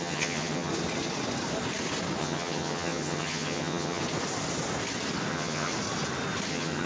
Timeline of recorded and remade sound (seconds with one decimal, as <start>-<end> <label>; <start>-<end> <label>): 0.0-0.7 remade; 0.7-2.2 recorded; 2.2-4.0 remade; 4.0-5.3 recorded; 5.3-5.7 remade; 5.7-6.5 recorded; 6.5-6.9 remade